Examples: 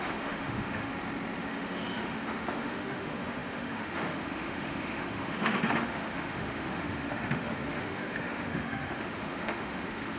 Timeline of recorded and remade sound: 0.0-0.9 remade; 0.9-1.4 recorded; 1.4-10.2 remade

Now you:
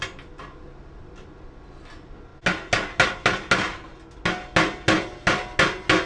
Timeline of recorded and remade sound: 0.0-6.1 recorded

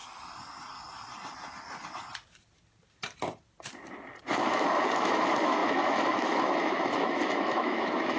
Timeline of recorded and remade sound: 0.0-4.3 recorded; 4.3-8.2 remade